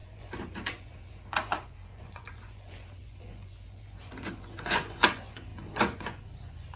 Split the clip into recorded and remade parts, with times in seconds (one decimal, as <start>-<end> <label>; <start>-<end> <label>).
0.0-6.8 remade